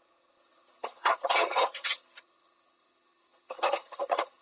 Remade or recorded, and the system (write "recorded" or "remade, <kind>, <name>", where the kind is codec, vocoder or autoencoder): remade, vocoder, HiFi-GAN